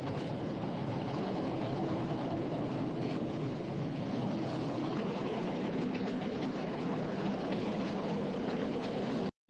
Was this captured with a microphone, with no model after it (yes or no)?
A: no